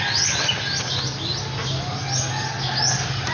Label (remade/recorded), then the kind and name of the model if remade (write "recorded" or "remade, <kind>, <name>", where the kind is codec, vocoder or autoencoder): recorded